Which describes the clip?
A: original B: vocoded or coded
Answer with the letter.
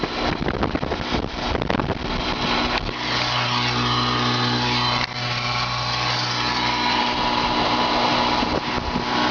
A